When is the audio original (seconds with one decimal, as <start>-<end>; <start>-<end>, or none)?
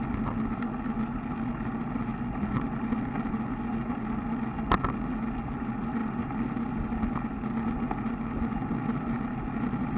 0.0-10.0